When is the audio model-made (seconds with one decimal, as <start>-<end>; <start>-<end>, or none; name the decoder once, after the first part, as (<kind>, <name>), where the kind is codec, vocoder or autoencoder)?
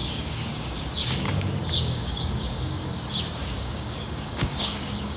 0.0-2.9 (codec, DAC); 3.4-5.2